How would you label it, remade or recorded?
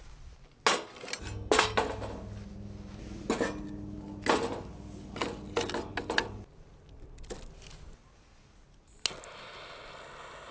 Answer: recorded